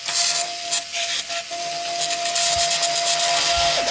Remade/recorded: recorded